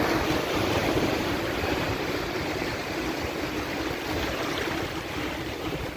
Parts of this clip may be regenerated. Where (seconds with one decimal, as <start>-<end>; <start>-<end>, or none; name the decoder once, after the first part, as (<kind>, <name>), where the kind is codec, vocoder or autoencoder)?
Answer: 0.0-0.8 (vocoder, BigVGAN v2); 4.4-6.0